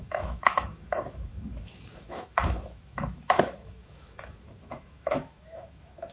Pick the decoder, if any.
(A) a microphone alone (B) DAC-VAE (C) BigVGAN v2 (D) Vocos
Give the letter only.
B